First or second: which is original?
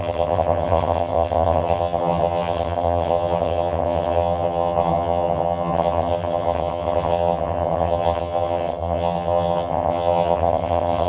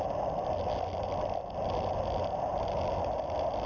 second